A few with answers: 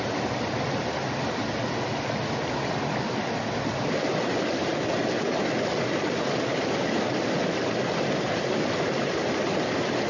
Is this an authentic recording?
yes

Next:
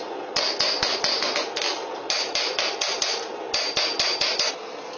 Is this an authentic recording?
yes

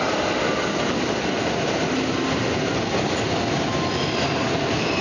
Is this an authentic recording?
yes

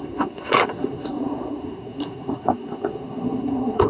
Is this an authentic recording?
no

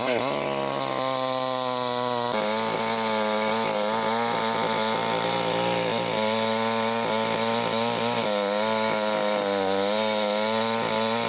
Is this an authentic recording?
yes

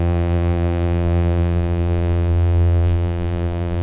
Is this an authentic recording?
no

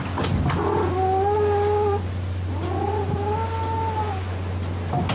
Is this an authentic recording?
yes